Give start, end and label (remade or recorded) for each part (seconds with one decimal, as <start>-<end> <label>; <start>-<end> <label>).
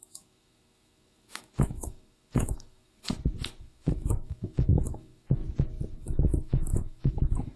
0.0-3.1 remade; 3.1-3.6 recorded; 3.6-5.4 remade; 5.4-5.9 recorded; 5.9-7.6 remade